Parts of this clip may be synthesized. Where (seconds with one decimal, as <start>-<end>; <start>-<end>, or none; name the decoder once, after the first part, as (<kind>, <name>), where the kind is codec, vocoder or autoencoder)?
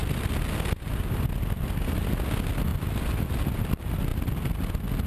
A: none